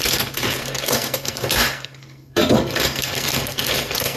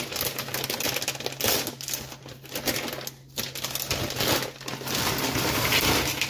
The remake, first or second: first